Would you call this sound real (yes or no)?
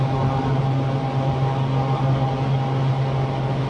yes